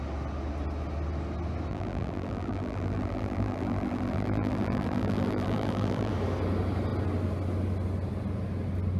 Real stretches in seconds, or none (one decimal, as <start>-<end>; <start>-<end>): 0.0-1.7; 6.1-9.0